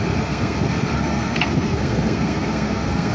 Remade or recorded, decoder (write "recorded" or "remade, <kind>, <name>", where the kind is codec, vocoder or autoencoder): remade, codec, SNAC